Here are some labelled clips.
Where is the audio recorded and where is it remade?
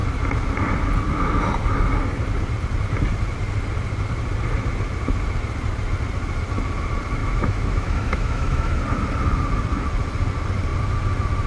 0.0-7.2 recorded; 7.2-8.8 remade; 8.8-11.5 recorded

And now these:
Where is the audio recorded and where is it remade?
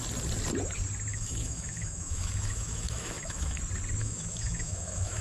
0.0-1.1 recorded; 1.1-3.6 remade; 3.6-4.0 recorded; 4.0-5.2 remade